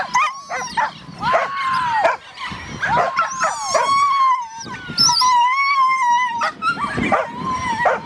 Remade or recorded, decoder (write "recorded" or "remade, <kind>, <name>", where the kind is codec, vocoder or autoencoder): recorded